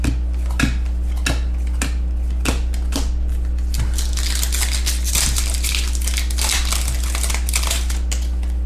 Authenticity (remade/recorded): recorded